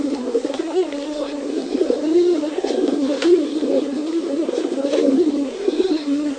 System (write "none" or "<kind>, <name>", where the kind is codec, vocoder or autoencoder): codec, SNAC